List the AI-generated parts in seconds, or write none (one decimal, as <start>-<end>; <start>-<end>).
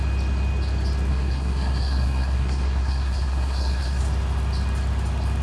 1.1-4.0